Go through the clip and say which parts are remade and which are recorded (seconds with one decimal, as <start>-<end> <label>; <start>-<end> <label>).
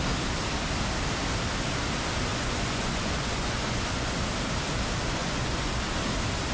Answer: 0.0-2.3 recorded; 2.3-4.2 remade; 4.2-5.2 recorded; 5.2-5.8 remade; 5.8-6.5 recorded